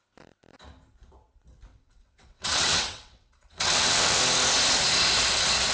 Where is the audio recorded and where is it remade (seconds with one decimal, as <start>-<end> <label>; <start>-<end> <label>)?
0.0-1.7 recorded; 1.7-4.2 remade; 4.2-5.7 recorded